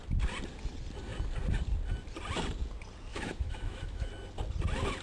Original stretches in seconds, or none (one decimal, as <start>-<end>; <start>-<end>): 0.0-3.1; 4.1-5.0